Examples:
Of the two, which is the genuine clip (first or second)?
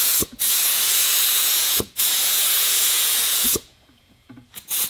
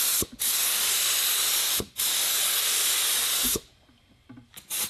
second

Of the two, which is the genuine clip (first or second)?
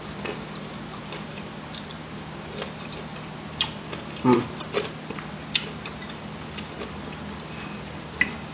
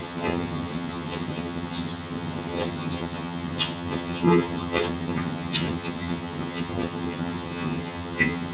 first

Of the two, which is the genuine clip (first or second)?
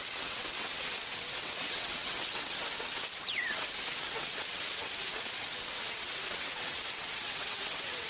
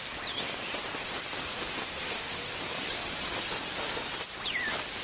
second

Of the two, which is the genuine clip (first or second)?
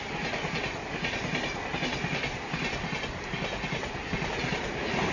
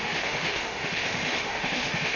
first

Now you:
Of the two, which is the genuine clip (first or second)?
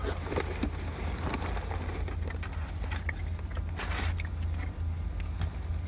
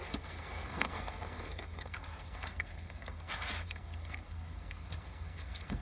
first